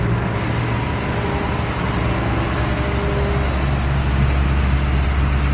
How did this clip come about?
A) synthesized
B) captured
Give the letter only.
B